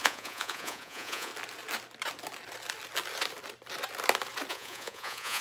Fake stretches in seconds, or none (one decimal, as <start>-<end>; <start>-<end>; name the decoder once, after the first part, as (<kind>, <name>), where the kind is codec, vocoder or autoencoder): 0.0-1.3 (vocoder, Vocos); 4.5-5.4